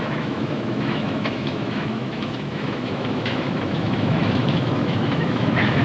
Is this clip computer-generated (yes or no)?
yes